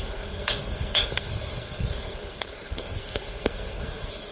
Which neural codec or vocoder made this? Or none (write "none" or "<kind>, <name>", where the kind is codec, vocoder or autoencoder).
codec, SNAC